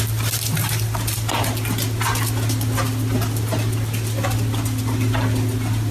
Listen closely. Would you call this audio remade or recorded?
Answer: recorded